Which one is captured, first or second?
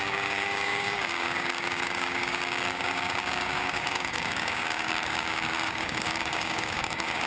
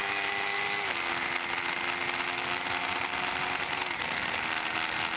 second